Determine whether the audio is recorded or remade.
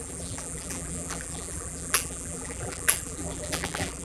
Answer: remade